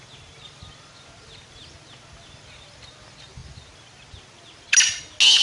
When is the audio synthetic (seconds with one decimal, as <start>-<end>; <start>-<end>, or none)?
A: none